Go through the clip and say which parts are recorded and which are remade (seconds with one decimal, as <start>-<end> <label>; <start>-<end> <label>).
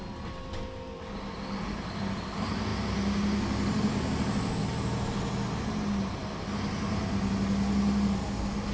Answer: 0.0-8.7 recorded